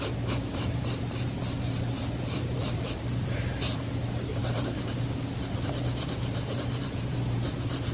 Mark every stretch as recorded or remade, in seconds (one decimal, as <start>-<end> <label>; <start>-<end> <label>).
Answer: 0.0-7.9 remade

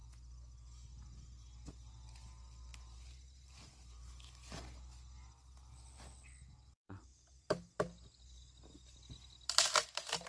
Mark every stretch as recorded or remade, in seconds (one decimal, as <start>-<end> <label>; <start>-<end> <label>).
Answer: 0.0-10.3 recorded

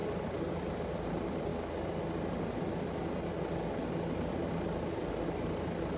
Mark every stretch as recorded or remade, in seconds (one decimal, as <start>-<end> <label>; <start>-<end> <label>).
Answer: 0.0-1.5 remade; 1.5-5.1 recorded; 5.1-6.0 remade